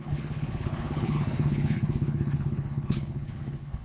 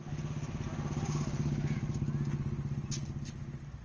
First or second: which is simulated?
first